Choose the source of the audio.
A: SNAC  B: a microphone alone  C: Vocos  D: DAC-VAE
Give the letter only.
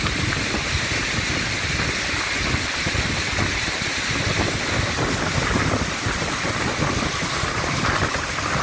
B